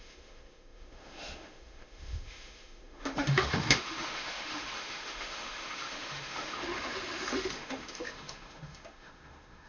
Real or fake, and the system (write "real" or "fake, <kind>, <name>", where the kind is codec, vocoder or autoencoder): fake, autoencoder, DAC-VAE